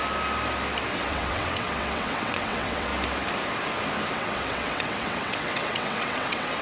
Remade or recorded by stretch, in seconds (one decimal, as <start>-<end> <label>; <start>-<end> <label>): 0.0-0.9 recorded; 0.9-2.9 remade; 2.9-4.1 recorded; 4.1-6.6 remade